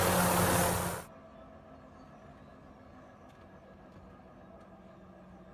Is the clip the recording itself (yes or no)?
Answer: yes